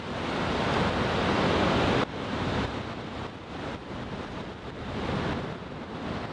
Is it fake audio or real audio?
real